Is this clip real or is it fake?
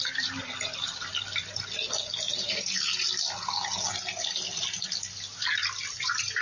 real